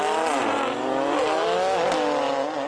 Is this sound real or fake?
real